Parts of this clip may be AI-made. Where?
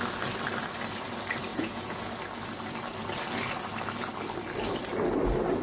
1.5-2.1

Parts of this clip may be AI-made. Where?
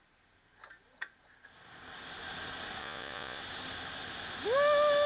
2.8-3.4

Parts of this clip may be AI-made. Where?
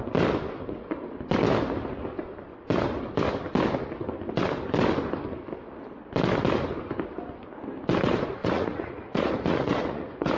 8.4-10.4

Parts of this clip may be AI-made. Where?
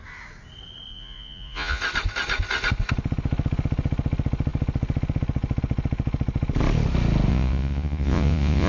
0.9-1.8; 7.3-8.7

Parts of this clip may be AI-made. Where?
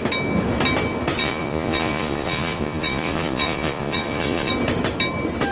1.2-4.5